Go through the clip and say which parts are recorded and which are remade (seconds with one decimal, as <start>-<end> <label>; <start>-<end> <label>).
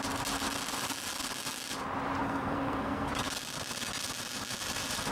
0.0-2.2 recorded; 2.2-3.1 remade; 3.1-5.1 recorded